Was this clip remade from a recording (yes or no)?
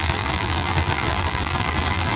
yes